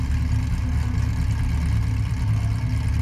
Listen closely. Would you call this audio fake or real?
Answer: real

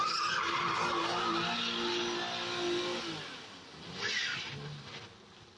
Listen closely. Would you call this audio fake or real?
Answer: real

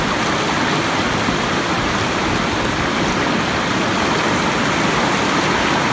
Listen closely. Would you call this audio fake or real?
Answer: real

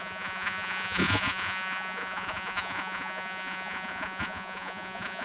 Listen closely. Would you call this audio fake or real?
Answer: fake